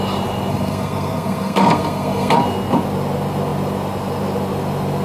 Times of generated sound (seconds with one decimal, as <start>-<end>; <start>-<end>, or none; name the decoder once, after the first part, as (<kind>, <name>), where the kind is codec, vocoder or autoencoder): 0.5-2.3 (codec, SNAC)